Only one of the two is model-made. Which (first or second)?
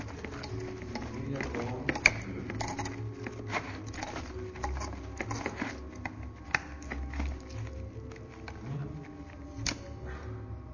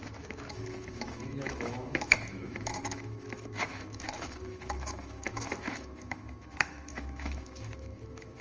second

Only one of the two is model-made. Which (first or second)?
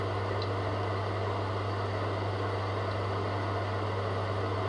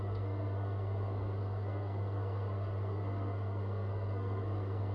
second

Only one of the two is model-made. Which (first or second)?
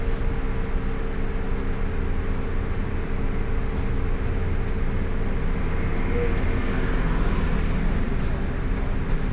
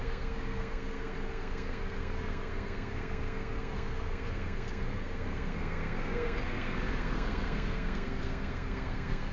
second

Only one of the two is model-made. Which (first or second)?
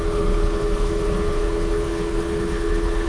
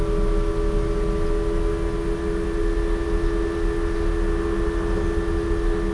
first